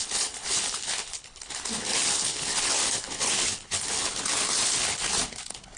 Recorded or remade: remade